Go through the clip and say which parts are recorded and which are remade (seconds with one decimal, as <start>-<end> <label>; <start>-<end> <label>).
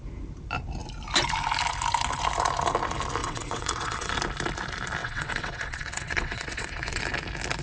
0.0-3.2 recorded; 3.2-4.1 remade; 4.1-5.0 recorded; 5.0-7.0 remade; 7.0-7.6 recorded